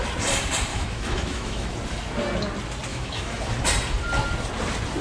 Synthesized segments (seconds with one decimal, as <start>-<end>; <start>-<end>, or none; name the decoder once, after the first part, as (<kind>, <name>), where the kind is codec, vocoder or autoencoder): 0.7-1.7 (autoencoder, DAC-VAE); 2.9-3.4